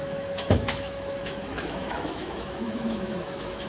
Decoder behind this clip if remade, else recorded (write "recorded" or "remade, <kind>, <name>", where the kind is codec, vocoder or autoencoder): remade, autoencoder, DAC-VAE